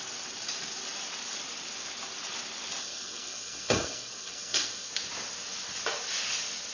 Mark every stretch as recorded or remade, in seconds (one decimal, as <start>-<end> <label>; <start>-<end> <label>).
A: 0.0-2.8 recorded; 2.8-4.9 remade; 4.9-6.7 recorded